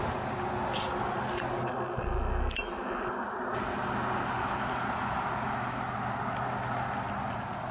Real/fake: real